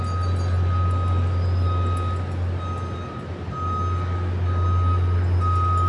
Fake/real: real